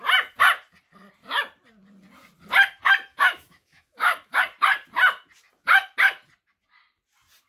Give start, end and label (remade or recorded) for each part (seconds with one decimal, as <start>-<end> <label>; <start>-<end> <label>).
0.0-3.1 recorded; 3.1-4.4 remade; 4.4-7.5 recorded